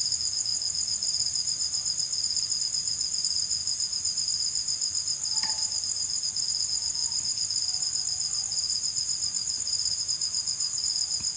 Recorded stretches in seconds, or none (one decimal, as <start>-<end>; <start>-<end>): 0.0-11.4